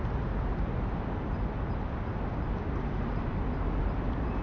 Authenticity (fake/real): real